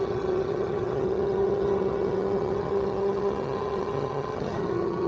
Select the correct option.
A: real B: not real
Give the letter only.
B